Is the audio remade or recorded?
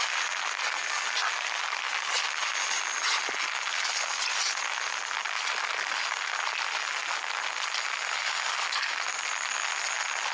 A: recorded